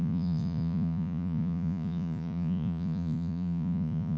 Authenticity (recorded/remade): remade